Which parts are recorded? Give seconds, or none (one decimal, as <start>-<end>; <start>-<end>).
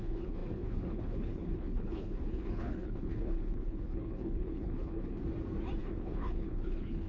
5.2-5.8